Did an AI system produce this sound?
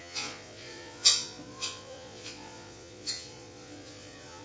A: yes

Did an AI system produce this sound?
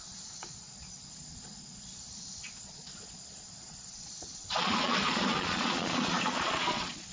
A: yes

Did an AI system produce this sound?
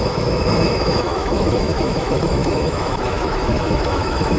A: yes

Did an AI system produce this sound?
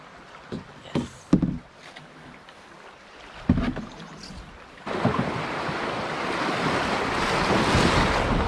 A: no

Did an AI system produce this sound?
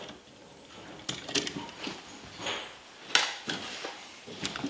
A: no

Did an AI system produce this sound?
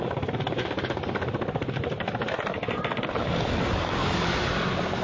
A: yes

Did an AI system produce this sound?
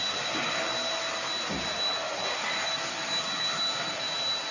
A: no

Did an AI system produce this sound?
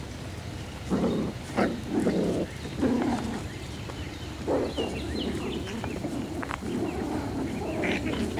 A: no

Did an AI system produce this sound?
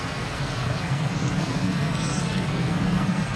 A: yes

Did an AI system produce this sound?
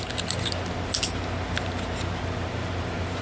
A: no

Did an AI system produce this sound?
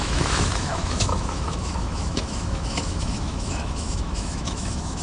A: yes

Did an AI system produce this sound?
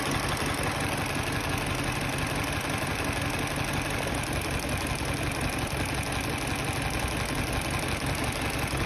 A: no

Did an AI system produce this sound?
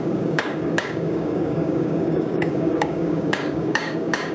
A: yes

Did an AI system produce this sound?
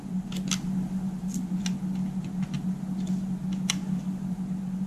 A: no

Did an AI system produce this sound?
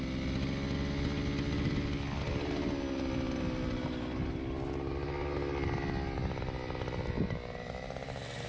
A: no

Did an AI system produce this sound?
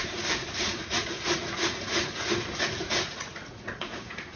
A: yes